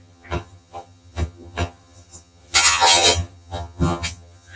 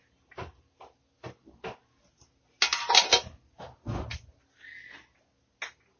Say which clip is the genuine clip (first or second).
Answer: second